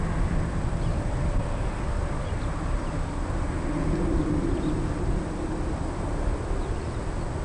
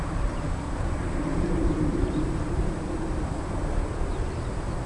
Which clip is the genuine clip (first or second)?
first